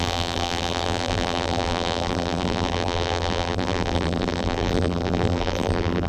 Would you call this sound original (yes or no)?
no